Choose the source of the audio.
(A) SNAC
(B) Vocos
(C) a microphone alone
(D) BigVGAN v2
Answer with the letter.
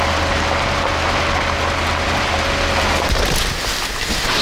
C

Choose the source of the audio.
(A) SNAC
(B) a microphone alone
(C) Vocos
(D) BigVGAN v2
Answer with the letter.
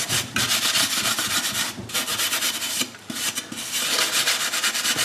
D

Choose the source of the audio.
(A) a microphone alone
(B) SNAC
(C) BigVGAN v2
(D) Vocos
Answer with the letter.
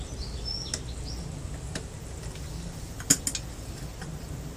A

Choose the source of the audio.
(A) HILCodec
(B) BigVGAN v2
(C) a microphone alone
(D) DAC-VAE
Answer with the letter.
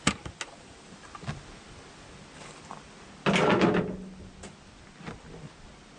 C